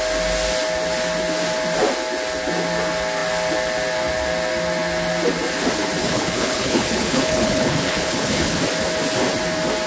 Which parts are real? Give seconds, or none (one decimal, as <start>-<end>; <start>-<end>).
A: 0.0-6.0; 8.6-9.9